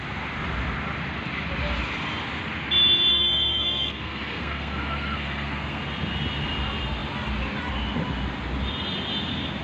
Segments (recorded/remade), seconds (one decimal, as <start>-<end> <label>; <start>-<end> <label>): 0.0-3.1 recorded; 3.1-5.8 remade; 5.8-9.6 recorded